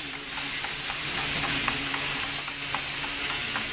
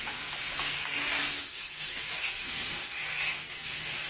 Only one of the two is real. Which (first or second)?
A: first